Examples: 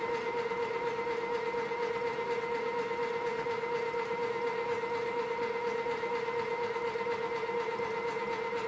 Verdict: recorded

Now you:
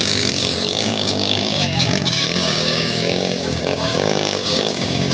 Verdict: remade